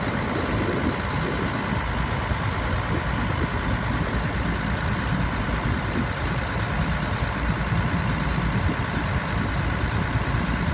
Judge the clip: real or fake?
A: real